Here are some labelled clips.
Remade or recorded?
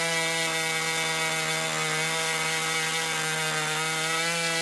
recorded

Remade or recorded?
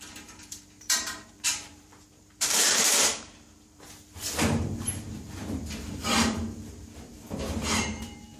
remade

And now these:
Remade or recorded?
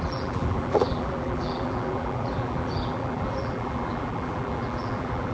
remade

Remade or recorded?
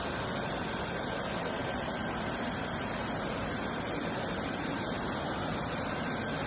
remade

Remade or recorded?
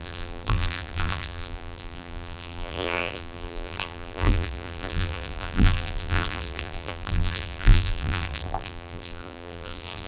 remade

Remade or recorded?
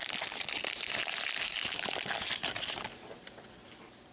remade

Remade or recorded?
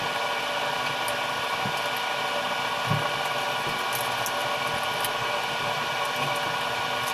recorded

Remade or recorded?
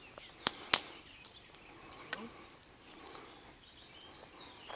recorded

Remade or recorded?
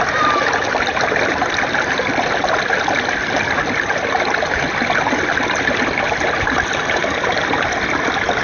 remade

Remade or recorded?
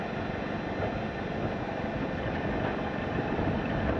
recorded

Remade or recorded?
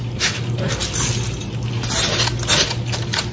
recorded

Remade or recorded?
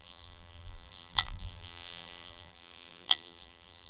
remade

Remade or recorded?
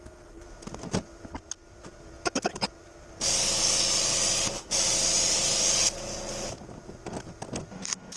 recorded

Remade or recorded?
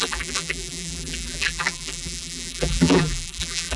remade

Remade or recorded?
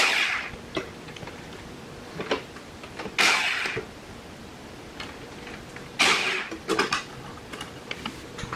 recorded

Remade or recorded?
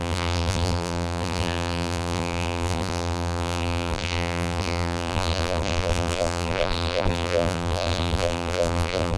remade